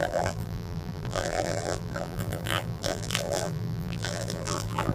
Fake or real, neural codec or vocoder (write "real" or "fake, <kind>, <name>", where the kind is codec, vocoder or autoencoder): fake, vocoder, BigVGAN v2